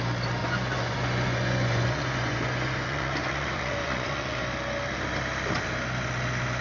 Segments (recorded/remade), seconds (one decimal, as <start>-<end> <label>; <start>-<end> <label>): 0.0-0.4 recorded; 0.4-4.4 remade; 4.4-6.6 recorded